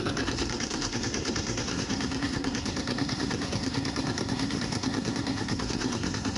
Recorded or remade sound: remade